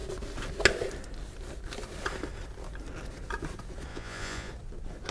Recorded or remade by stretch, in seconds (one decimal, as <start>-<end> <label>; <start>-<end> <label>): 0.0-3.9 recorded; 3.9-4.5 remade; 4.5-5.1 recorded